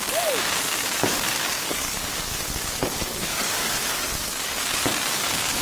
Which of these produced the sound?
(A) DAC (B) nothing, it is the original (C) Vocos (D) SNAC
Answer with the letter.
A